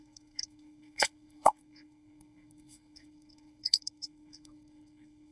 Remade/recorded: remade